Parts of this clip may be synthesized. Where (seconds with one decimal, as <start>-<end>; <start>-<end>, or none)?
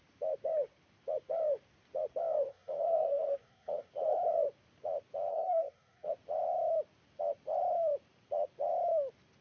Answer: 2.5-3.9; 5.3-6.1